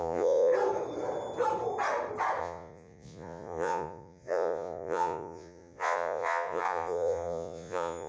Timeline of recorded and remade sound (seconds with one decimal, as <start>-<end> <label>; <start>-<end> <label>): 0.0-0.5 remade; 0.5-2.4 recorded; 2.4-8.1 remade